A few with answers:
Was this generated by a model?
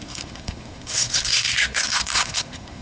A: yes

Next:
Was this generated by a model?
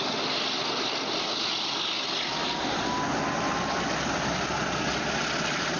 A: no